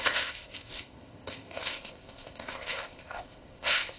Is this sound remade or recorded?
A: remade